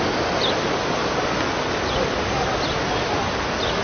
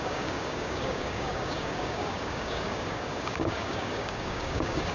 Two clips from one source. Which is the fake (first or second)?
second